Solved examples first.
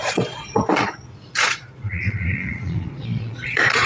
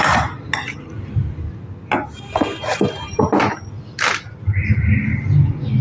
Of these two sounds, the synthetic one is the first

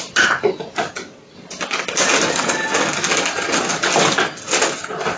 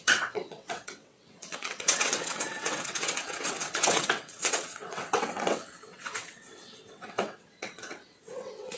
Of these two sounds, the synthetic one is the second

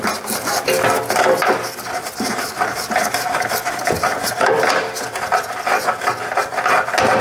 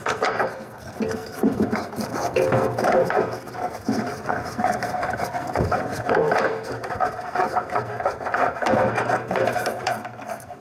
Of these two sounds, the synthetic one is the second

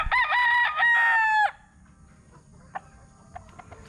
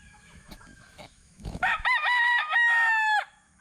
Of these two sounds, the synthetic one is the second